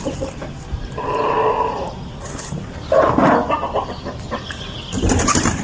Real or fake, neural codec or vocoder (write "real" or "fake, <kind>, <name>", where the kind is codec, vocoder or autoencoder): real